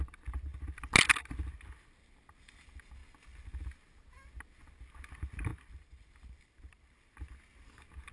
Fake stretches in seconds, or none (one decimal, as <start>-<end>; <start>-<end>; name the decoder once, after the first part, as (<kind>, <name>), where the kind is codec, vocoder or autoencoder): none